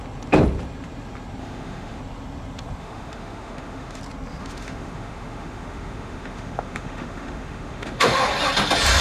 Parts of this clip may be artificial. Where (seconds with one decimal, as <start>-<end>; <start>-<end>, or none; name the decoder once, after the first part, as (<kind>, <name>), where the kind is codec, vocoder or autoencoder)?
1.4-2.0 (autoencoder, DAC-VAE); 2.8-4.0; 4.4-8.2